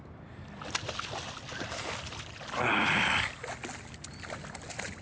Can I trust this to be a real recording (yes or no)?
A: yes